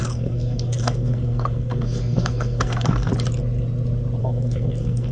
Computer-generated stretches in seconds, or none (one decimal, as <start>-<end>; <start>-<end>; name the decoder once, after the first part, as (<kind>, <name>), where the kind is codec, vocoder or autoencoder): 0.0-3.1 (codec, SNAC); 4.2-5.1